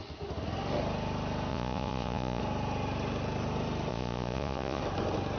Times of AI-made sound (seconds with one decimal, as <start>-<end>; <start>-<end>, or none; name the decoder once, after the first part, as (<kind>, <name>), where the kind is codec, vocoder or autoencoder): 1.5-2.4 (vocoder, Vocos); 3.9-4.8